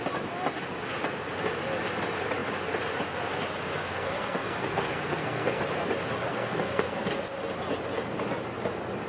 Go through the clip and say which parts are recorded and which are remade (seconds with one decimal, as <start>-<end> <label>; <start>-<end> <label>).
0.0-3.8 recorded; 3.8-5.6 remade; 5.6-6.3 recorded; 6.3-7.2 remade; 7.2-9.1 recorded